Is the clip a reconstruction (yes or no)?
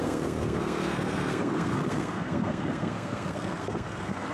yes